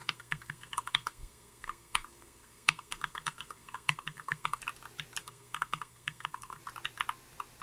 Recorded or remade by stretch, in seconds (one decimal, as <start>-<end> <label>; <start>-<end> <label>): 0.0-4.6 remade; 4.6-5.2 recorded; 5.2-6.6 remade; 6.6-7.6 recorded